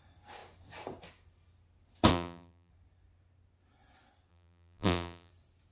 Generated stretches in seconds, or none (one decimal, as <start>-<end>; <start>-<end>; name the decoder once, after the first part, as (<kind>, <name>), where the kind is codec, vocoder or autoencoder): 2.1-2.7 (vocoder, BigVGAN v2); 4.3-5.3